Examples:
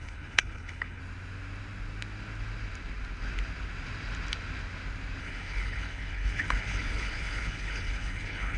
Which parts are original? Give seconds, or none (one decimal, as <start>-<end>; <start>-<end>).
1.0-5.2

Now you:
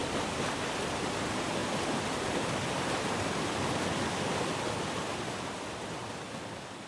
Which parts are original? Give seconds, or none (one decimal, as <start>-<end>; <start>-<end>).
0.0-6.9

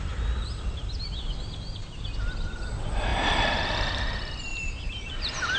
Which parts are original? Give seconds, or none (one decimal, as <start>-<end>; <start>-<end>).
0.0-3.1; 3.9-4.5

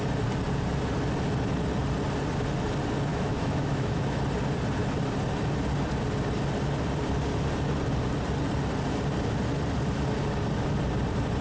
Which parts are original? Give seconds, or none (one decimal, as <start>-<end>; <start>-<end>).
0.0-3.1; 4.2-11.4